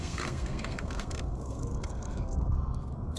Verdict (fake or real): fake